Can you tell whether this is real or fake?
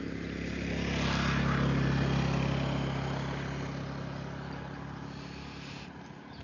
real